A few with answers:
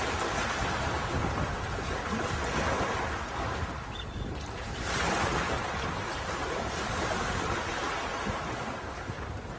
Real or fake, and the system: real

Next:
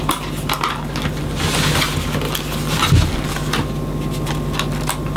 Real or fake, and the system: real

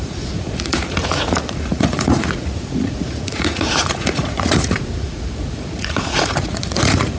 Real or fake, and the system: fake, vocoder, Vocos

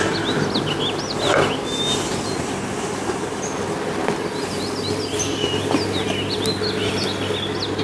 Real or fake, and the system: real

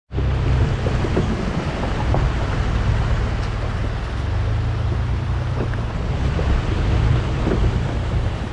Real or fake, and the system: real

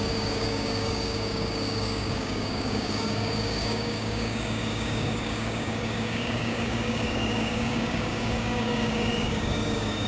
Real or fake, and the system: fake, codec, DAC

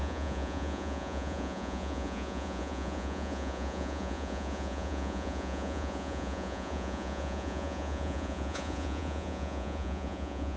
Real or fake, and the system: fake, vocoder, Vocos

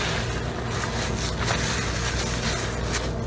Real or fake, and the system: real